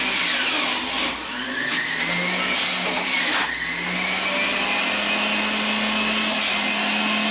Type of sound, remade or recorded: recorded